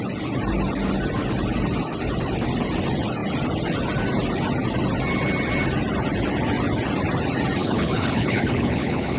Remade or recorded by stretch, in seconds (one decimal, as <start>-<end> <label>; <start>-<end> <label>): 0.0-7.6 recorded; 7.6-9.2 remade